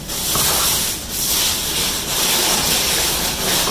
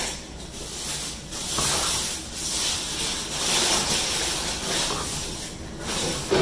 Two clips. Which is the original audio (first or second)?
second